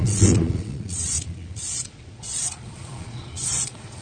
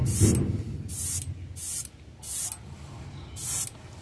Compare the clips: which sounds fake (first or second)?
first